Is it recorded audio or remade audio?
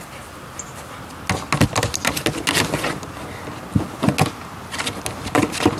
recorded